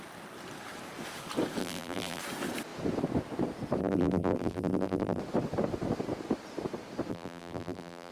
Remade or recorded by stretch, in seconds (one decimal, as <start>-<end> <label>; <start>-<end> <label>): 0.0-1.6 recorded; 1.6-2.2 remade; 2.2-3.8 recorded; 3.8-5.2 remade; 5.2-7.1 recorded; 7.1-8.1 remade